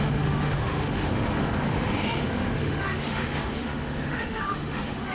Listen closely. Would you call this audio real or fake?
fake